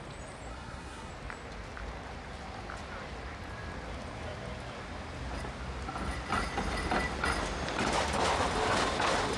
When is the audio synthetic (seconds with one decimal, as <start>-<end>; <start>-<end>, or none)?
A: 0.5-1.1